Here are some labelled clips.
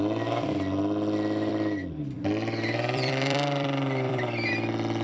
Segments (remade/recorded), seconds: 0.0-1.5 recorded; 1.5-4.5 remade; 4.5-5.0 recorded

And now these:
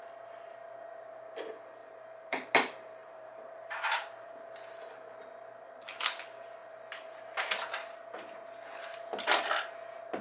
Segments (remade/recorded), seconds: 0.0-1.8 recorded; 1.8-2.5 remade; 2.5-3.0 recorded; 3.0-4.8 remade; 4.8-10.2 recorded

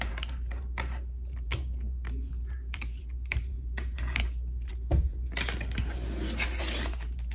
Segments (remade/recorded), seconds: 0.0-4.7 remade; 4.7-6.6 recorded; 6.6-7.3 remade

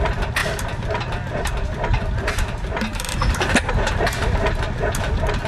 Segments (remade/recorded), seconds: 0.0-5.5 recorded

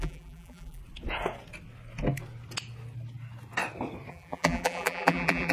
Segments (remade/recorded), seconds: 0.0-0.8 remade; 0.8-4.1 recorded; 4.1-5.5 remade

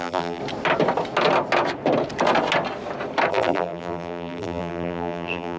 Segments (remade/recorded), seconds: 0.0-0.4 remade; 0.4-3.3 recorded; 3.3-5.6 remade

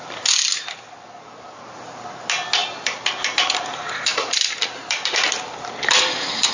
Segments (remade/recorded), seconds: 0.0-2.6 recorded; 2.6-6.5 remade

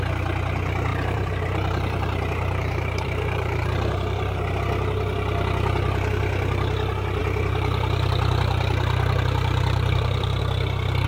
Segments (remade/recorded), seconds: 0.0-0.9 recorded; 0.9-4.6 remade; 4.6-7.2 recorded; 7.2-10.4 remade; 10.4-11.1 recorded